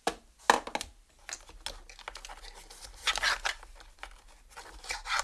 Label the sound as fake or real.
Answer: real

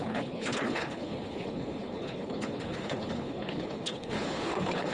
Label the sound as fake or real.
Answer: fake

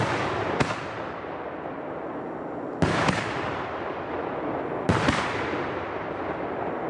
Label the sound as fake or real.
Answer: real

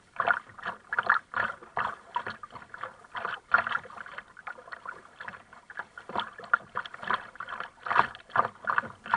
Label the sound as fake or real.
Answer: real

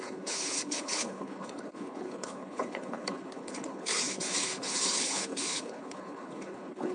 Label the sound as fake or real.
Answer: fake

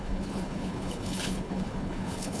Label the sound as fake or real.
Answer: fake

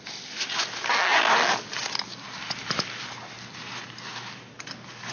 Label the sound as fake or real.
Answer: real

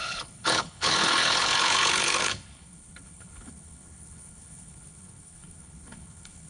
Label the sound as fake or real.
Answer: fake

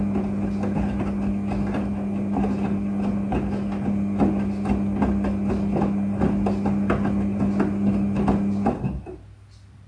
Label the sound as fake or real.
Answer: real